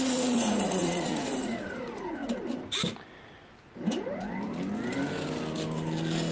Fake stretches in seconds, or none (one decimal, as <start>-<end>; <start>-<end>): 0.0-2.2

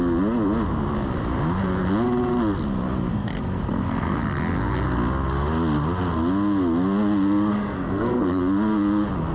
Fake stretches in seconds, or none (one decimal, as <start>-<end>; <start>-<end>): 3.1-4.2; 7.5-8.4

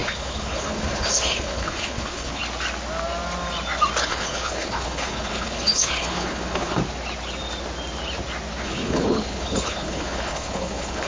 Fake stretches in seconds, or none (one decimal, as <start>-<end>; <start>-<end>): 0.0-2.4; 4.1-6.8; 8.6-11.1

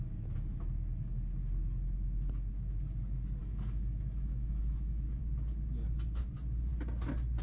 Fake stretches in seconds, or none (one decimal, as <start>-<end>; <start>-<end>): 3.4-5.2

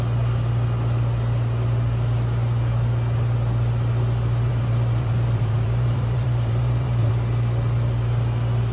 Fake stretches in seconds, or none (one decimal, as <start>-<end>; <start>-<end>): 4.5-7.1

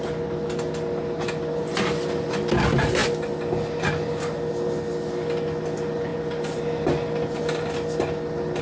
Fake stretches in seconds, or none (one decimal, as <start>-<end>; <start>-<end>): none

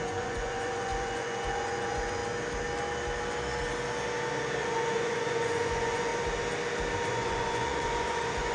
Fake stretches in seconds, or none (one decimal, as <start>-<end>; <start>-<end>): 0.0-2.2; 4.6-6.1; 7.1-8.5